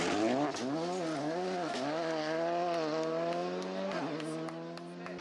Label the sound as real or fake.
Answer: real